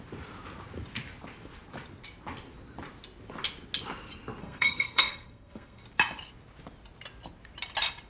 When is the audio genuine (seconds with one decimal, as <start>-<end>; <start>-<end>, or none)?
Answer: 0.0-4.4; 5.8-8.1